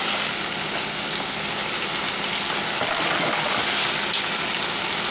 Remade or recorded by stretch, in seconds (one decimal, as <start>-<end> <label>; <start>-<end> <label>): 0.0-5.1 recorded